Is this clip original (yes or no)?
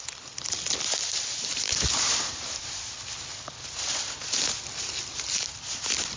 no